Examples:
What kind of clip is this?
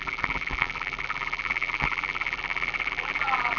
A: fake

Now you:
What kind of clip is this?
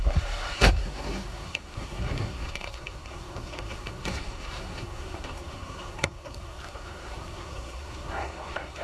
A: fake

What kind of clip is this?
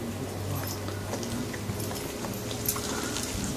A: real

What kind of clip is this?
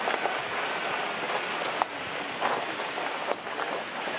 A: real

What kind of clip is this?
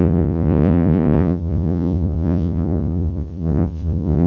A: fake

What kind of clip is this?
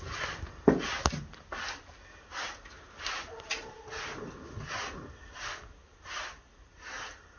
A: real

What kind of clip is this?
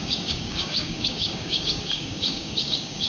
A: fake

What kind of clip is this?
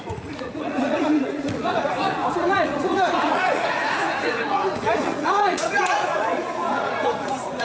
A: fake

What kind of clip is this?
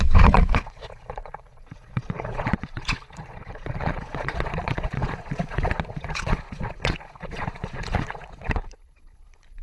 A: fake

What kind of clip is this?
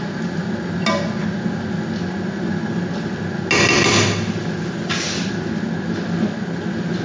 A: real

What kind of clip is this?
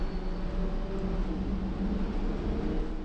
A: real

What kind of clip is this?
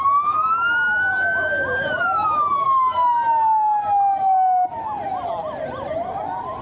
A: real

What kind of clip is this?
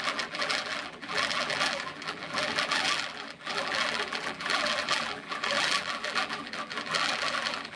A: fake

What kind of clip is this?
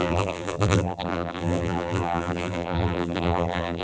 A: fake